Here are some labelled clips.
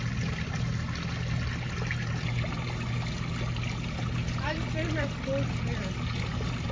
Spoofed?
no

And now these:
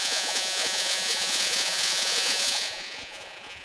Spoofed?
yes